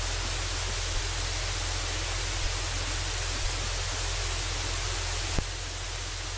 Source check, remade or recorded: recorded